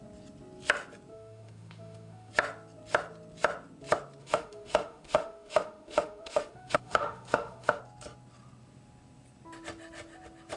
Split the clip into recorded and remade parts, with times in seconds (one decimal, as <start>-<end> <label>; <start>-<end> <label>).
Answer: 0.0-1.1 recorded; 1.1-2.3 remade; 2.3-4.2 recorded; 4.2-7.8 remade; 7.8-10.6 recorded